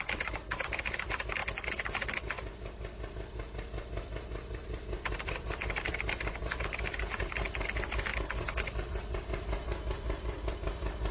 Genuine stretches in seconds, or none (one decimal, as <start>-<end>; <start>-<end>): 1.4-3.1; 8.1-8.9